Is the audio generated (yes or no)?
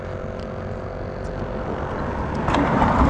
no